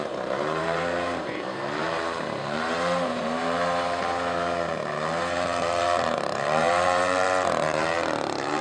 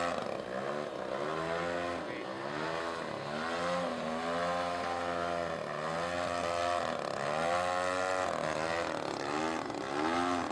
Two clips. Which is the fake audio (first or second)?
first